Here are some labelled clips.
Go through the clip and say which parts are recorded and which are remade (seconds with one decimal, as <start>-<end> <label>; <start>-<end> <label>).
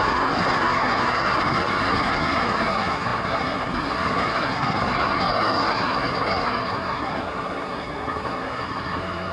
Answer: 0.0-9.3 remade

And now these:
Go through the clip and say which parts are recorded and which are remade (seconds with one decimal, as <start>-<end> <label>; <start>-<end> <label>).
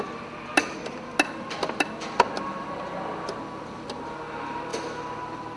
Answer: 0.0-5.6 recorded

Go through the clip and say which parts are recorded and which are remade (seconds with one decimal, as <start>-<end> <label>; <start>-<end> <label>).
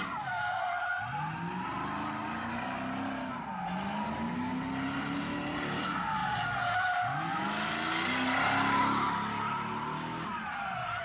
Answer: 0.0-11.0 recorded